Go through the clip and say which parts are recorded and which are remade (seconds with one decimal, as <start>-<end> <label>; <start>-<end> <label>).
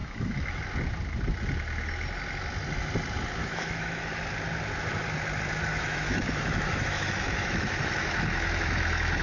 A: 0.0-0.6 remade; 0.6-3.4 recorded; 3.4-4.2 remade; 4.2-5.7 recorded; 5.7-9.2 remade